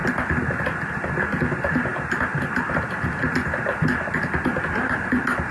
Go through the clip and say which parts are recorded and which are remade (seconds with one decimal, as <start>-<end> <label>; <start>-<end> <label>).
0.0-5.5 recorded